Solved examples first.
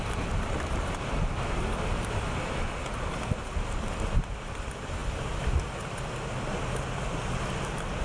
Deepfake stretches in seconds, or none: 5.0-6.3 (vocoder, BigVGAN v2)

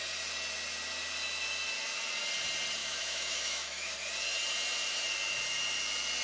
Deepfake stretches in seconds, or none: 2.8-3.9 (autoencoder, DAC-VAE)

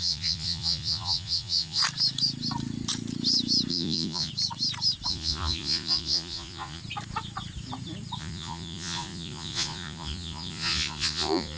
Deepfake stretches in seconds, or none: 0.0-1.8 (vocoder, Vocos); 3.7-4.3; 5.1-6.8; 8.2-11.6

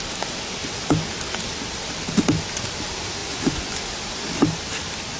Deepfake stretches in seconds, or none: 3.2-3.9 (vocoder, Vocos)

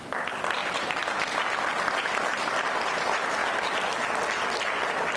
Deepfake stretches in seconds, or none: 3.4-3.9 (vocoder, BigVGAN v2)

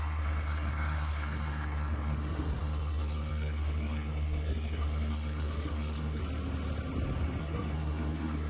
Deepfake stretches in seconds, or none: 0.0-6.2 (codec, SNAC); 7.4-8.5

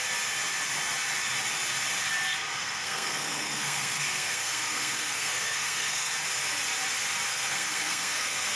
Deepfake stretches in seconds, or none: 2.6-6.1 (codec, SNAC); 7.3-8.6

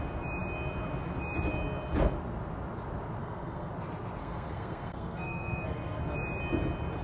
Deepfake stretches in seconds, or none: 3.2-3.7 (codec, SNAC); 4.2-6.0